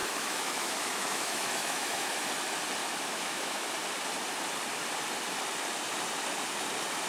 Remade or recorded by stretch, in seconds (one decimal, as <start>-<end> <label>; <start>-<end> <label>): 0.0-2.1 remade; 2.1-2.8 recorded; 2.8-3.7 remade; 3.7-7.1 recorded